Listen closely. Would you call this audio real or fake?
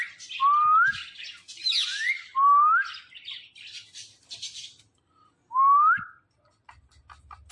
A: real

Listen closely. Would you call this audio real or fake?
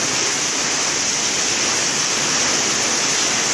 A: real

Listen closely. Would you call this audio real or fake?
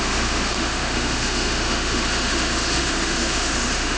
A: fake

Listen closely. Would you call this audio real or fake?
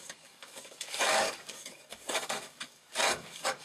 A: fake